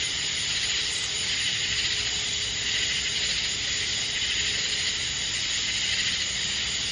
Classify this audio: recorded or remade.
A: recorded